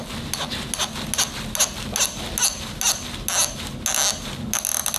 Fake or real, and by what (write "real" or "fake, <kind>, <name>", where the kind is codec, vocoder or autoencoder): real